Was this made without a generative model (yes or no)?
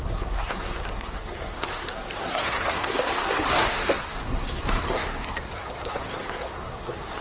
no